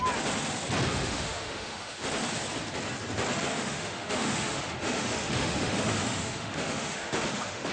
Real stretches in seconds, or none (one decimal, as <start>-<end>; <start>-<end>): 0.0-0.9; 2.0-3.5